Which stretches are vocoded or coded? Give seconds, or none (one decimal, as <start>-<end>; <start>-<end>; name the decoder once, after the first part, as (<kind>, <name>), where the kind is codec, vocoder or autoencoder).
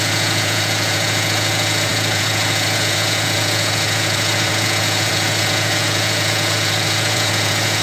0.0-7.8 (vocoder, Vocos)